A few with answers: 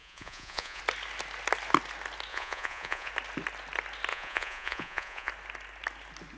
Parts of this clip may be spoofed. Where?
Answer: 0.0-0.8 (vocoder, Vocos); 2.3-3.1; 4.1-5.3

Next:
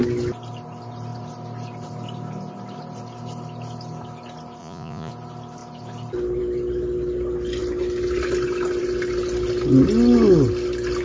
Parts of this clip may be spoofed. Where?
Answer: 4.6-5.1 (vocoder, Vocos)